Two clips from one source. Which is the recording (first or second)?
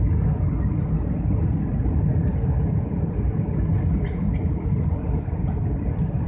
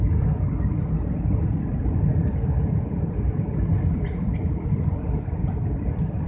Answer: first